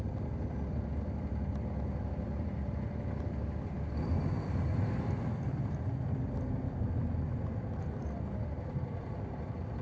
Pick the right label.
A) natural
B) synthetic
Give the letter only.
A